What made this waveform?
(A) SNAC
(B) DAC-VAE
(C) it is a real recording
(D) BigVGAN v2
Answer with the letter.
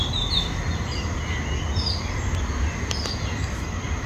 C